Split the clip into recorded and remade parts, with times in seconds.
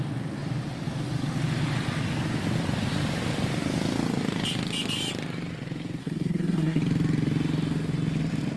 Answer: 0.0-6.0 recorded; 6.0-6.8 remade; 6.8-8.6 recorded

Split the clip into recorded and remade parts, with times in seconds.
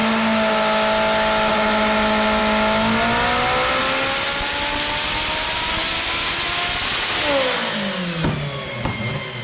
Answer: 0.0-9.4 recorded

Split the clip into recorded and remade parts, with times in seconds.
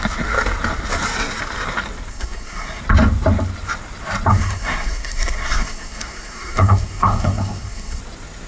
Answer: 0.0-2.1 recorded; 2.1-2.8 remade; 2.8-4.3 recorded; 4.3-8.0 remade; 8.0-8.5 recorded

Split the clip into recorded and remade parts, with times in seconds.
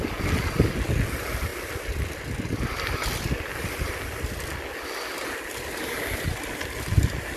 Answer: 0.0-7.4 recorded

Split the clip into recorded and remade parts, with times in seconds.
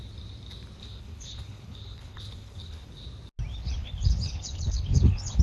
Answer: 0.0-0.8 recorded; 0.8-2.9 remade; 2.9-3.5 recorded; 3.5-5.4 remade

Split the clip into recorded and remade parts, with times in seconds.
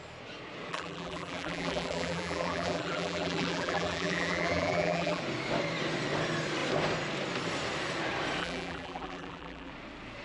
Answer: 0.0-0.7 recorded; 0.7-5.2 remade; 5.2-8.4 recorded; 8.4-9.7 remade; 9.7-10.2 recorded